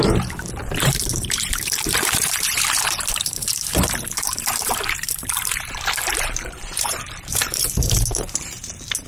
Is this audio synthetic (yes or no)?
yes